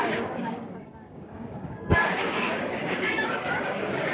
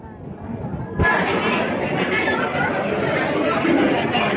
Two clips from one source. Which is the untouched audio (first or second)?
second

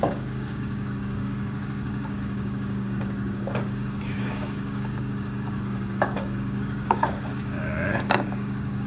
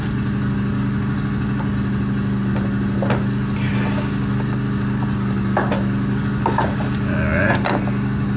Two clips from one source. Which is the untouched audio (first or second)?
second